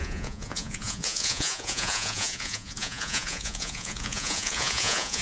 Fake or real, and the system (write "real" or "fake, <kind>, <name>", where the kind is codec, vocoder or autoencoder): fake, vocoder, Vocos